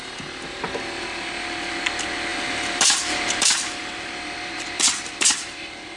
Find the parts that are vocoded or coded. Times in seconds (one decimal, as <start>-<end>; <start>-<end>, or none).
2.3-6.0